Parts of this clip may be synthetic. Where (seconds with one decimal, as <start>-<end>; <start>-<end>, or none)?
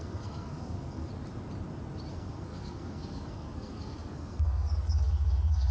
0.0-1.1; 2.1-5.7